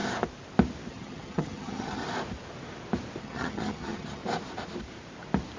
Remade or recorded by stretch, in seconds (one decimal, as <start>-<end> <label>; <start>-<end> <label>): 0.0-0.9 recorded; 0.9-2.0 remade; 2.0-3.2 recorded; 3.2-4.2 remade; 4.2-5.6 recorded